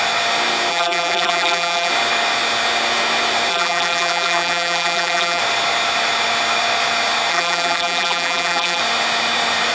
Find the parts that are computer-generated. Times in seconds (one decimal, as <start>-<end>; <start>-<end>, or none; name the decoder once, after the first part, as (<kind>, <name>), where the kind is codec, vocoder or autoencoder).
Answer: 0.7-1.9 (vocoder, BigVGAN v2); 3.5-5.4; 7.3-8.8